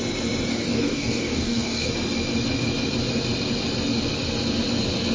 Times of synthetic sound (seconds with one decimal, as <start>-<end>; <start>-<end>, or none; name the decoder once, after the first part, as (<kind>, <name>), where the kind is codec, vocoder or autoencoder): 0.5-1.9 (codec, DAC)